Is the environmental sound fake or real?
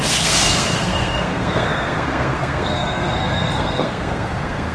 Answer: fake